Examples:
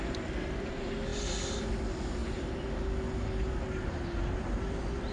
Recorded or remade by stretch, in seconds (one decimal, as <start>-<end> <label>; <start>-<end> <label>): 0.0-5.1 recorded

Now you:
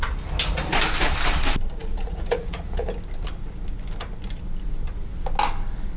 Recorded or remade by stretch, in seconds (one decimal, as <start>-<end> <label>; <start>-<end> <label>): 0.0-1.8 recorded; 1.8-2.9 remade; 2.9-6.0 recorded

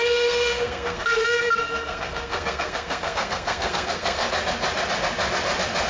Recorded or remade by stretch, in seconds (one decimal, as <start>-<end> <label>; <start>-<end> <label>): 0.0-4.2 remade; 4.2-5.9 recorded